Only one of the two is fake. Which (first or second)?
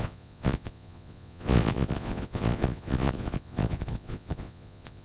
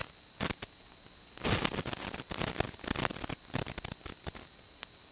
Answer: first